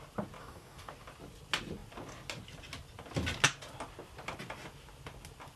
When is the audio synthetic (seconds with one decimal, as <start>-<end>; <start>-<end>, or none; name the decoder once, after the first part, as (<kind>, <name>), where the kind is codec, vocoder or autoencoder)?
0.4-0.9 (codec, DAC)